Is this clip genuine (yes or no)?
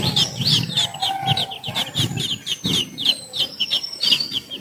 no